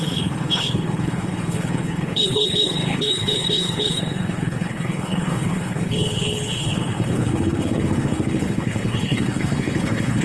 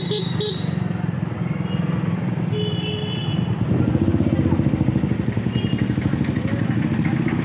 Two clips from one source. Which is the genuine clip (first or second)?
second